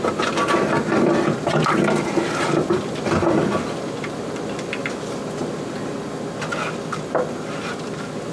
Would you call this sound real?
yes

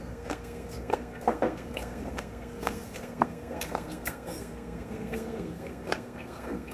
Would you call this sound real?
no